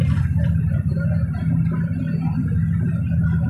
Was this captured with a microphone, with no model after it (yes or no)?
yes